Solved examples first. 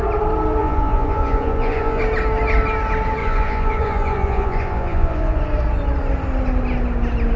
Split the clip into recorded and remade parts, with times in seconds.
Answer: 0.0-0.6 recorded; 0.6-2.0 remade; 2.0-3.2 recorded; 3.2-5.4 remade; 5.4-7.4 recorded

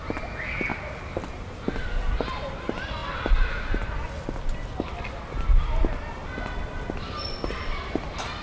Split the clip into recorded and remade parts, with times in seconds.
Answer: 0.0-8.4 recorded

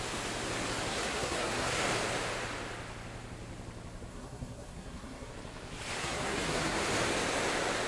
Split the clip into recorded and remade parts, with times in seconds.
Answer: 0.0-0.9 recorded; 0.9-1.8 remade; 1.8-4.1 recorded; 4.1-5.3 remade; 5.3-6.0 recorded; 6.0-6.8 remade; 6.8-7.9 recorded

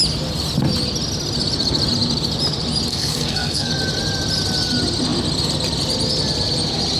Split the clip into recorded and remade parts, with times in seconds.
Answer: 0.0-2.9 recorded; 2.9-3.7 remade; 3.7-7.0 recorded

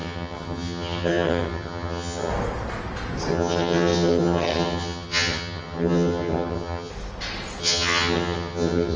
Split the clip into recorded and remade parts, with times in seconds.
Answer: 0.0-2.3 remade; 2.3-3.3 recorded; 3.3-6.9 remade; 6.9-7.6 recorded; 7.6-9.0 remade

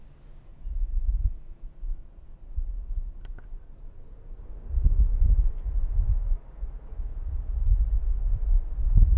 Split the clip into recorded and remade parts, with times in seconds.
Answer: 0.0-0.5 recorded; 0.5-4.4 remade; 4.4-7.1 recorded; 7.1-8.6 remade; 8.6-9.2 recorded